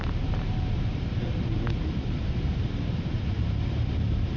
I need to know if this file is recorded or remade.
remade